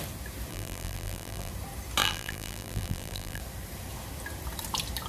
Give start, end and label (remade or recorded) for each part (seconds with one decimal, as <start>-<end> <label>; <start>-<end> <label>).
0.0-0.5 recorded; 0.5-1.5 remade; 1.5-2.0 recorded; 2.0-3.4 remade; 3.4-5.1 recorded